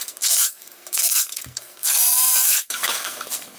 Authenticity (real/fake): fake